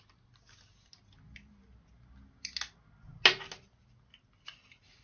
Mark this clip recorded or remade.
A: recorded